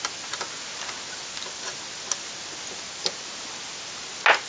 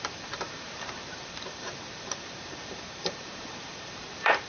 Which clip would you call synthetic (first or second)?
second